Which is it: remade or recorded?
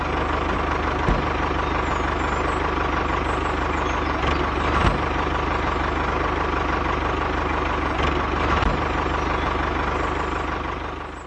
recorded